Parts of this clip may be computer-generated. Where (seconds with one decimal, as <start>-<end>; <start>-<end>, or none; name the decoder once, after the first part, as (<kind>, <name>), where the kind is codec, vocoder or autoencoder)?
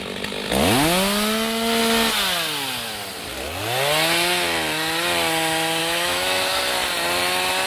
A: 5.8-6.6 (autoencoder, DAC-VAE)